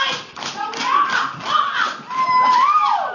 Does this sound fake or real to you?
real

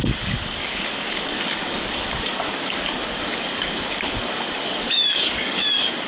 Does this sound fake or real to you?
fake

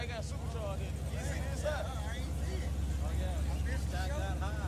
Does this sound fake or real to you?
real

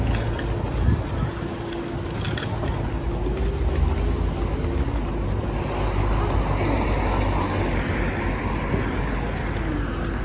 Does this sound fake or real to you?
real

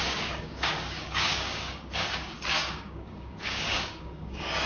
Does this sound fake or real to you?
fake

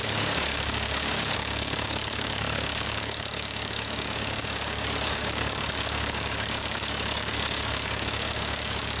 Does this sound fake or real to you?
fake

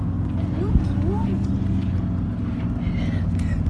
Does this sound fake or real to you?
real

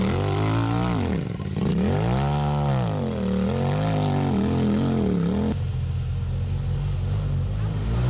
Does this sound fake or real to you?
real